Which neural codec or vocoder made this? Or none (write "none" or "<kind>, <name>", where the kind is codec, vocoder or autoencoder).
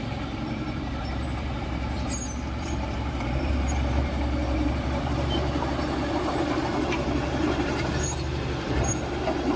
vocoder, BigVGAN v2